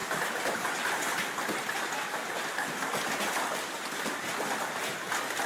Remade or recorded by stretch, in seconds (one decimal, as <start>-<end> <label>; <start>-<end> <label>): 0.0-5.5 recorded